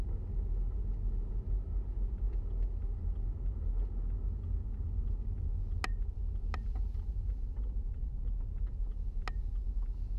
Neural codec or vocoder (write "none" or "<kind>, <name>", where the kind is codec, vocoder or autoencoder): none